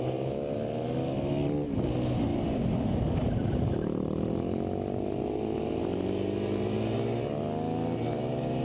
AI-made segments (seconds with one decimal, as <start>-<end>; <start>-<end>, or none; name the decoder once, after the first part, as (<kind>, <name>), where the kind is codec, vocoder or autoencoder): none